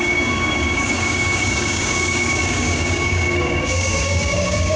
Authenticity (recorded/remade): remade